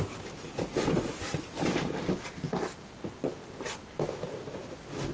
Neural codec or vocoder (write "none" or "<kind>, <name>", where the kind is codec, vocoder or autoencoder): none